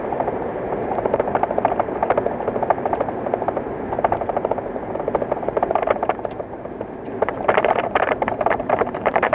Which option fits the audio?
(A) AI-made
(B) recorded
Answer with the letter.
A